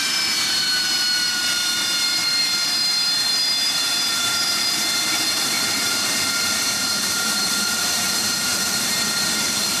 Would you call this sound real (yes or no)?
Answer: no